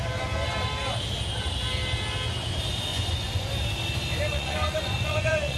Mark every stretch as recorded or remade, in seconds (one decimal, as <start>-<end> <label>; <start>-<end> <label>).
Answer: 0.0-2.9 recorded; 2.9-3.5 remade; 3.5-4.3 recorded; 4.3-5.6 remade